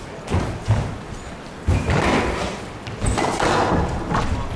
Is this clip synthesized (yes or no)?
no